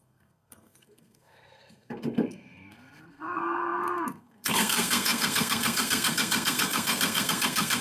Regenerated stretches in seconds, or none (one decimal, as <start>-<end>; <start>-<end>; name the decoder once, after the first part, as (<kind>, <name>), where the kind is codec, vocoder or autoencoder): 0.0-7.8 (codec, SNAC)